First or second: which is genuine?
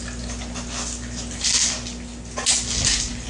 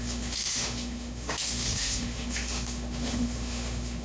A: first